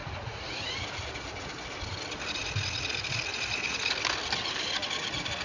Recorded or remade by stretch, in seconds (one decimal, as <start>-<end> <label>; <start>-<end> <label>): 0.0-0.6 remade; 0.6-5.4 recorded